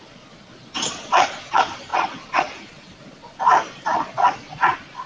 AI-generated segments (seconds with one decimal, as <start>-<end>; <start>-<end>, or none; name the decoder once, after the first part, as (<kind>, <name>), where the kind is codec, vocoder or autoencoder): 0.0-5.1 (vocoder, Vocos)